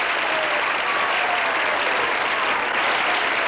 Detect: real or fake real